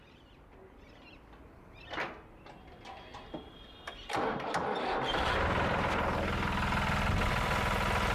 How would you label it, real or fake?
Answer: real